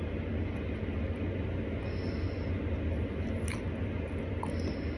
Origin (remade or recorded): recorded